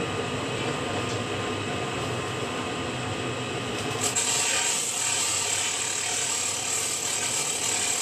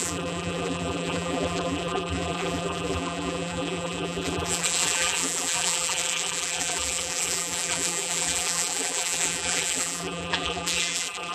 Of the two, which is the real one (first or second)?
first